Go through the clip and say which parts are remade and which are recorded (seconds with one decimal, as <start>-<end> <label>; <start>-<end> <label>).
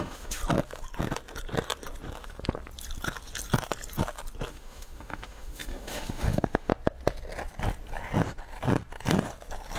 0.0-0.4 remade; 0.4-4.5 recorded; 4.5-6.7 remade; 6.7-9.8 recorded